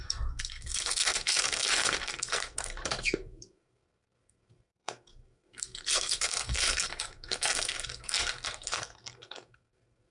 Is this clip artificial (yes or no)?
yes